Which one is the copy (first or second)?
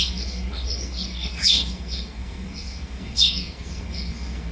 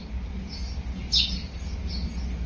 first